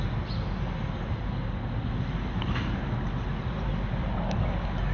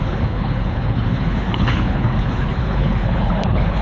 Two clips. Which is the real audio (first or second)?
first